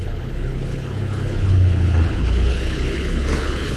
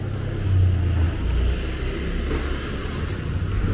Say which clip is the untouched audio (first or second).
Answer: second